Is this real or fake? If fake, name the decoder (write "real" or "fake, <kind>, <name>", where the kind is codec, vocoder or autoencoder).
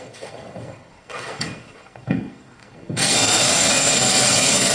fake, codec, SNAC